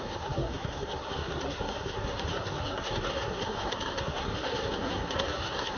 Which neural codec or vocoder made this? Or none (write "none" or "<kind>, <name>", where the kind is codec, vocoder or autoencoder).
codec, SNAC